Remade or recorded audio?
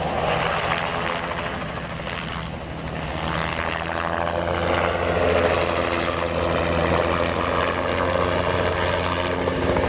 recorded